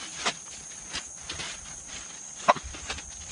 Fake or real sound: real